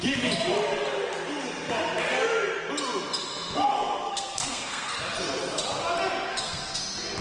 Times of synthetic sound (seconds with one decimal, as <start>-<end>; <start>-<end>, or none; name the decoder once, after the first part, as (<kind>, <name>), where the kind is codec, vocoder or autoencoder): 3.7-4.9 (codec, SNAC); 6.3-6.8